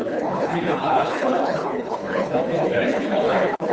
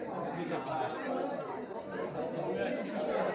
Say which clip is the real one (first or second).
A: second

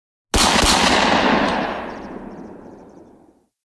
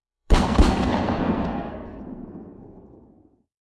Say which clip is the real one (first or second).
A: first